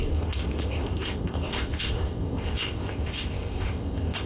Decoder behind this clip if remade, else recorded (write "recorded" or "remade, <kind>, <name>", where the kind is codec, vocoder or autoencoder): remade, codec, ZipCodec